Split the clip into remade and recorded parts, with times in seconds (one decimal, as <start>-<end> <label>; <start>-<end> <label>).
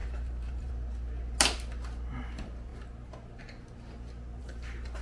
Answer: 0.0-0.7 remade; 0.7-4.4 recorded; 4.4-5.0 remade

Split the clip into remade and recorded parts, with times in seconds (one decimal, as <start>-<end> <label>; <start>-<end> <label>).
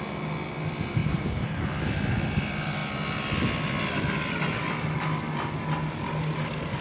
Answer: 0.0-1.0 recorded; 1.0-1.6 remade; 1.6-6.8 recorded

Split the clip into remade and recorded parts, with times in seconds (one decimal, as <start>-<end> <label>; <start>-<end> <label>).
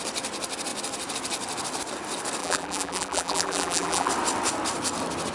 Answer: 0.0-2.4 recorded; 2.4-4.1 remade; 4.1-5.3 recorded